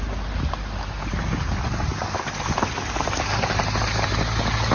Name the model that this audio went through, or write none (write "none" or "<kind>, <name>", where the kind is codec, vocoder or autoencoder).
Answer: none